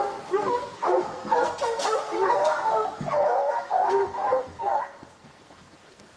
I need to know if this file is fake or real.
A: fake